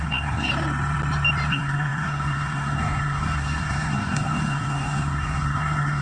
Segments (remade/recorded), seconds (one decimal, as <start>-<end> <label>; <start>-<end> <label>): 0.0-0.5 remade; 0.5-1.5 recorded; 1.5-6.0 remade